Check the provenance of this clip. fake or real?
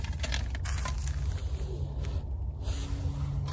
real